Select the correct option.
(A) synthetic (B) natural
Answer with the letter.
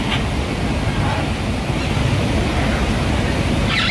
B